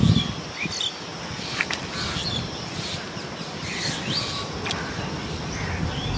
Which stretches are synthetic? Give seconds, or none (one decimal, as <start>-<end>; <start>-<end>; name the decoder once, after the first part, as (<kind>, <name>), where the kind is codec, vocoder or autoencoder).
none